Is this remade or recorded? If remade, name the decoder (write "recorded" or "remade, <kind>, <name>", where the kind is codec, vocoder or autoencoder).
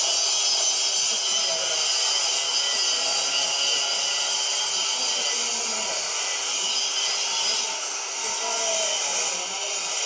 recorded